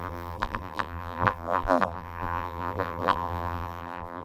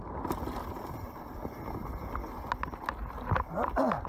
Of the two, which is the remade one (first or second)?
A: first